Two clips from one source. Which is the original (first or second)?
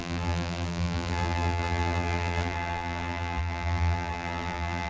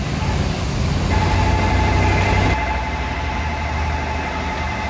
second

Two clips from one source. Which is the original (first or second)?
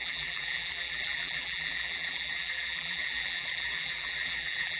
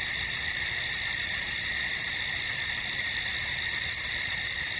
second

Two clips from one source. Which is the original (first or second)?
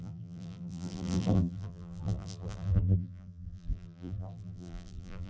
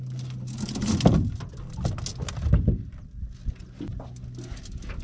second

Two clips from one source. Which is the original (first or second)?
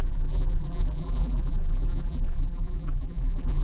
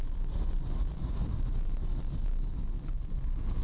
second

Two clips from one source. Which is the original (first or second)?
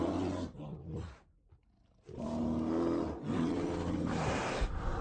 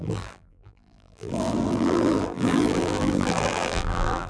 first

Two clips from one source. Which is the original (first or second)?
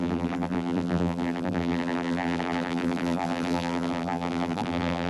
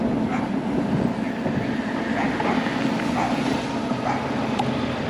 second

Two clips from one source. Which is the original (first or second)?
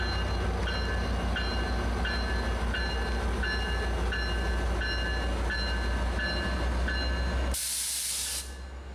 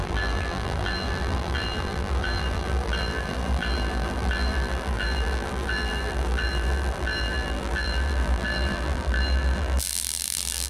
first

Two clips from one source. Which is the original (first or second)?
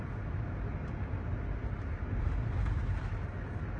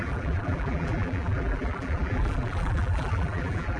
first